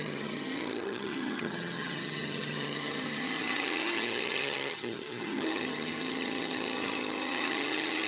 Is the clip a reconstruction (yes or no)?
yes